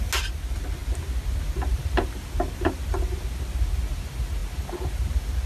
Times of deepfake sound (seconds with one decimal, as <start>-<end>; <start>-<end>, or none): none